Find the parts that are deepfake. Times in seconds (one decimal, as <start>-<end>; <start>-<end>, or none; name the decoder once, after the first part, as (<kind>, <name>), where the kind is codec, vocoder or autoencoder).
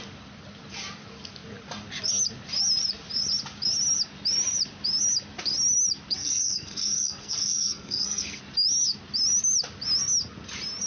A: 6.2-8.4 (codec, SNAC)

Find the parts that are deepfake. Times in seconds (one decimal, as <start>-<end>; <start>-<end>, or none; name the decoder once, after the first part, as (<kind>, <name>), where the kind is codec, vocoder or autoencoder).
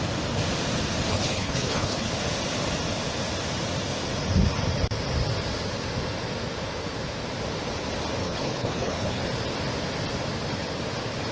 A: 1.1-2.1 (codec, HILCodec); 8.2-9.2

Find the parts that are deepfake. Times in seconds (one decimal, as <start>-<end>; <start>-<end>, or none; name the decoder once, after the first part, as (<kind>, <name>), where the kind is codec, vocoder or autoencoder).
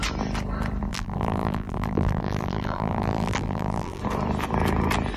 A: 0.9-4.0 (vocoder, BigVGAN v2)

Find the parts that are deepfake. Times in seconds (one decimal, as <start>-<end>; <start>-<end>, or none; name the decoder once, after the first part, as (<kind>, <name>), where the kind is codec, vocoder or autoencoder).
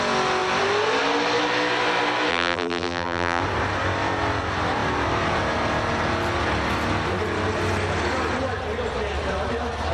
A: 2.3-3.4 (vocoder, BigVGAN v2)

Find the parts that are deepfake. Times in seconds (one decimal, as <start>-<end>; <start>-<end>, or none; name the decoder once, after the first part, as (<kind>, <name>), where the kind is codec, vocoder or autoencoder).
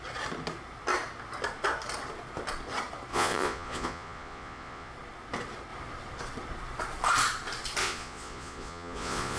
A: 3.1-4.9 (vocoder, Vocos); 7.8-9.4